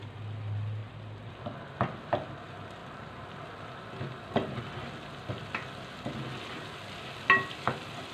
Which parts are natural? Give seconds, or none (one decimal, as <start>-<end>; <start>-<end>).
0.0-8.1